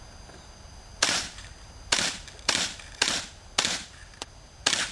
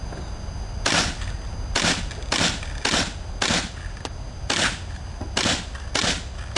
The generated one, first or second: first